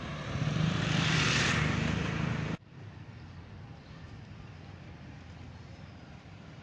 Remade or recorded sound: remade